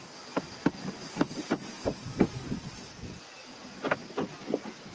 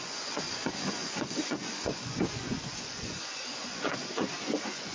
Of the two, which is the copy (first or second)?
second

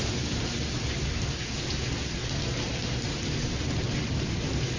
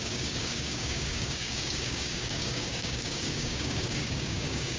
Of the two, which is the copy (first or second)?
second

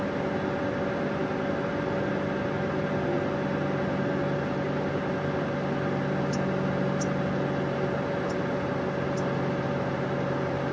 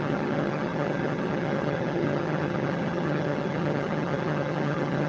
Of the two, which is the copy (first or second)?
second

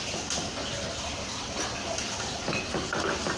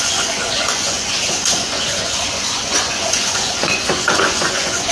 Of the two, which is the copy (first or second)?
second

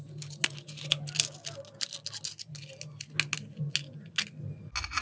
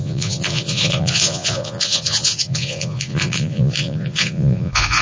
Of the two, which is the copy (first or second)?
second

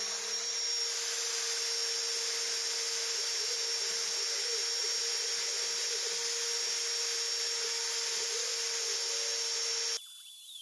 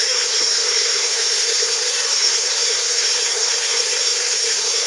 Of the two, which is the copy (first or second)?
second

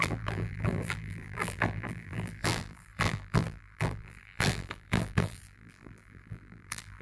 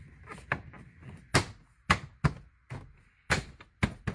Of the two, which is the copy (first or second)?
first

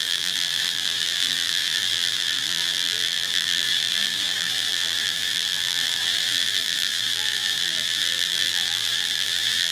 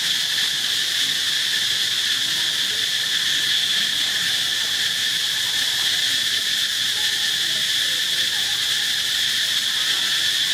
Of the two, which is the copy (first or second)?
first